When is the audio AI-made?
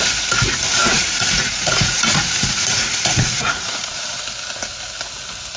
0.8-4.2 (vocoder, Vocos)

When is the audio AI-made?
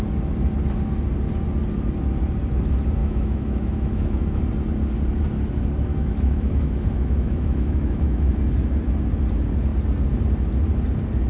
3.0-4.4 (autoencoder, DAC-VAE); 5.9-8.3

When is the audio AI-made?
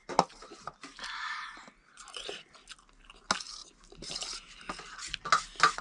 none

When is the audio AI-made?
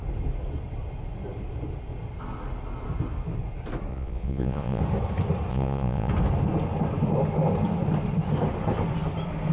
3.9-4.8 (vocoder, Vocos); 5.5-6.1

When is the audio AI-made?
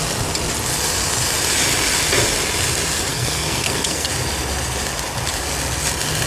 3.1-4.1 (codec, SNAC)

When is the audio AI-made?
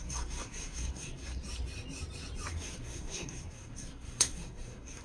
0.0-1.4 (codec, SNAC); 2.5-5.0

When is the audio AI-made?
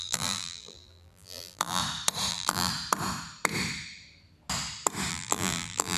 0.0-1.8 (vocoder, BigVGAN v2); 2.3-2.7; 5.1-6.0